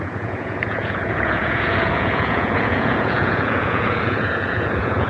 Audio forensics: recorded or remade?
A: remade